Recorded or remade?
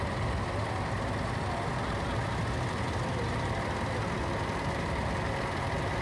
recorded